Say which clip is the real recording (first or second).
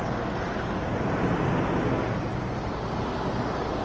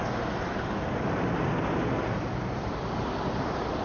first